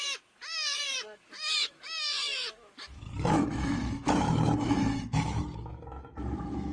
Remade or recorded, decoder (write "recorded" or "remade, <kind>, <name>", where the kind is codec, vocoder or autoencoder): remade, autoencoder, DAC-VAE